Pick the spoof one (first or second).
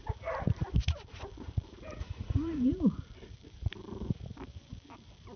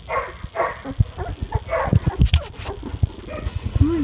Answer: first